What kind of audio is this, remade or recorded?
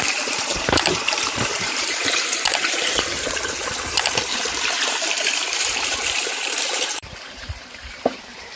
remade